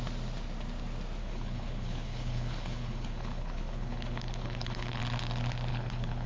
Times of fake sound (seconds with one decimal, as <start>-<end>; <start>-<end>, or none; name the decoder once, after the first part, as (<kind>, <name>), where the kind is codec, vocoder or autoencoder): 1.2-5.0 (codec, HILCodec); 5.7-6.3